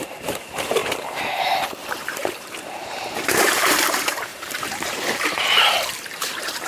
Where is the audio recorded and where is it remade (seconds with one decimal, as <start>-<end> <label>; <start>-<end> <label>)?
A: 0.0-6.7 remade